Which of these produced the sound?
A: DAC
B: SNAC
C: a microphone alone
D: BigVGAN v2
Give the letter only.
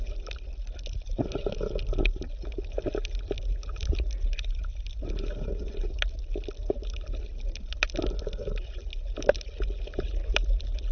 C